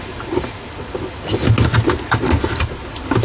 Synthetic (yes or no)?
no